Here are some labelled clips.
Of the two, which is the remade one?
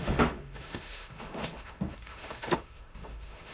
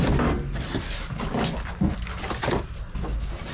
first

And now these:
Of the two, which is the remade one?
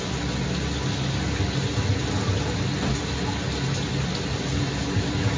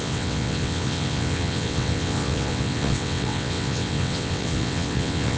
second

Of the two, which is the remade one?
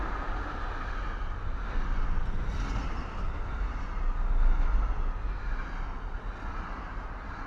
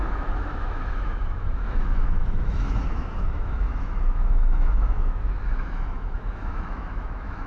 second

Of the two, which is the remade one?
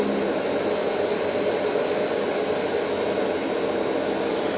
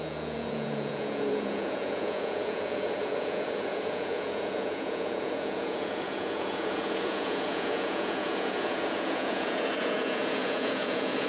second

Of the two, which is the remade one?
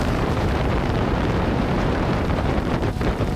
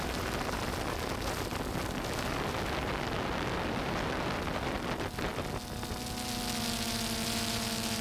first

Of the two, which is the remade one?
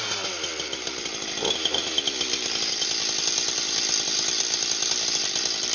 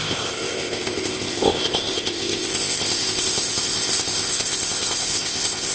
second